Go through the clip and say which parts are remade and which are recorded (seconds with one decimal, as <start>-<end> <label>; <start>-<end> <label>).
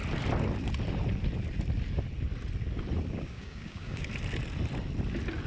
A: 0.0-3.1 recorded; 3.1-4.1 remade; 4.1-5.5 recorded